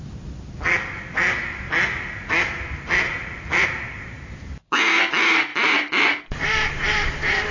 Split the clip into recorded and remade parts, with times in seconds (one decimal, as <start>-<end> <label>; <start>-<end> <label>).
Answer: 0.0-3.6 recorded; 3.6-4.3 remade; 4.3-5.5 recorded; 5.5-7.5 remade